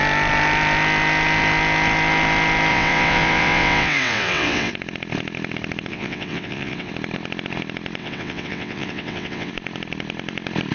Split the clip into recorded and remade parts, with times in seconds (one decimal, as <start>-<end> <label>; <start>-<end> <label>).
0.0-2.7 recorded; 2.7-4.7 remade; 4.7-5.9 recorded; 5.9-6.9 remade; 6.9-8.0 recorded; 8.0-9.5 remade; 9.5-10.7 recorded